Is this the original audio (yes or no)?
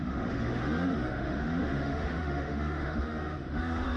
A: no